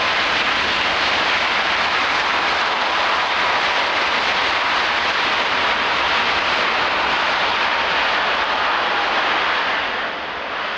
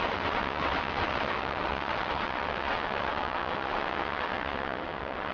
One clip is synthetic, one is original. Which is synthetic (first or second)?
second